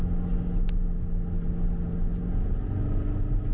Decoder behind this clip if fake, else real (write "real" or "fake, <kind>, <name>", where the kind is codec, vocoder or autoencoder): real